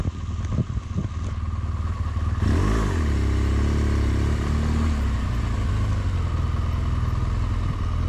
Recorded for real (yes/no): yes